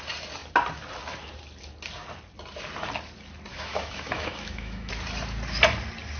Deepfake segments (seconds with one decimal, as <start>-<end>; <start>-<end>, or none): 3.5-4.9